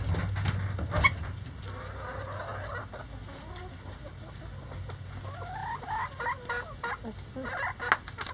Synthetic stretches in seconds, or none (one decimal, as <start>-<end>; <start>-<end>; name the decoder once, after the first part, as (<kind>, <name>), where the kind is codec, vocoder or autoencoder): none